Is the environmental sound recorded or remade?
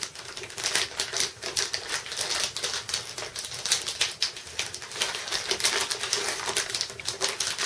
recorded